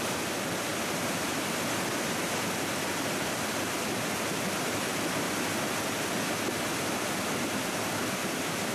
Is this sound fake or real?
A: real